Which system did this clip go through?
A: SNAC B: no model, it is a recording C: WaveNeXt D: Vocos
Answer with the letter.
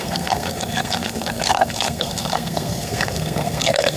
A